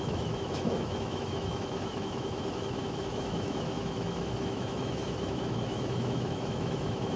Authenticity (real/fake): fake